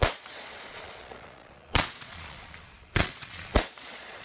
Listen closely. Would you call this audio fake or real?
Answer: fake